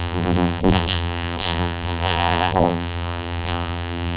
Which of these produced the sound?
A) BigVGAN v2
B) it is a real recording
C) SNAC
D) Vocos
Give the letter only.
A